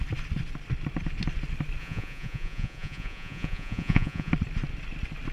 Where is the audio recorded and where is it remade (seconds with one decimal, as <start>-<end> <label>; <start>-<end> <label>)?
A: 0.0-1.8 recorded; 1.8-4.3 remade; 4.3-5.3 recorded